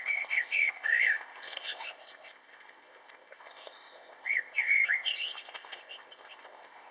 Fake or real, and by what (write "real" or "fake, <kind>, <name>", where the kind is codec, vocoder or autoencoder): fake, codec, ZipCodec